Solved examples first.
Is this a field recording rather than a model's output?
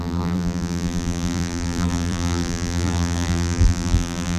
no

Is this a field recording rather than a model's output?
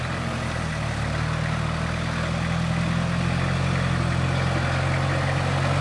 yes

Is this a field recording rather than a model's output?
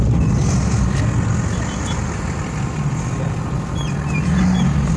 yes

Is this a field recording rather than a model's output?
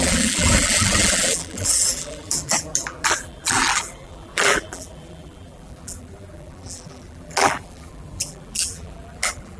no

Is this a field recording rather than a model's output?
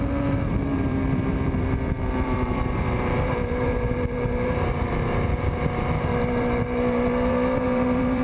no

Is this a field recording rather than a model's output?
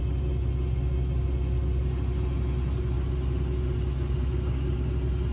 yes